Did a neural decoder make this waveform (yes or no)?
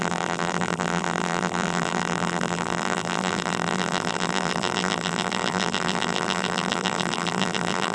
yes